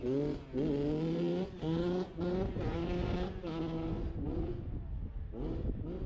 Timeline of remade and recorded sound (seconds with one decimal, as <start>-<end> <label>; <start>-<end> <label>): 0.0-1.3 recorded; 1.3-4.7 remade; 4.7-6.1 recorded